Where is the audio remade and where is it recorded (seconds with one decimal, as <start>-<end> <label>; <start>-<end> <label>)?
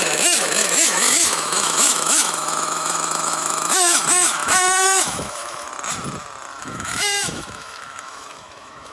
0.0-5.7 remade; 5.7-6.6 recorded; 6.6-8.9 remade